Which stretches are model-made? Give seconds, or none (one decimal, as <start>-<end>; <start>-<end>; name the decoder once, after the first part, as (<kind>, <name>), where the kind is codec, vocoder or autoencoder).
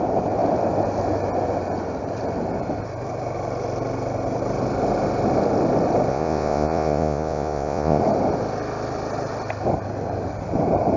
6.1-8.0 (vocoder, Vocos)